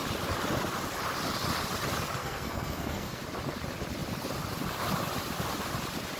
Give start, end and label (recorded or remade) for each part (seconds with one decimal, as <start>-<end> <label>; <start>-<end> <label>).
0.0-2.2 recorded; 2.2-3.2 remade; 3.2-6.2 recorded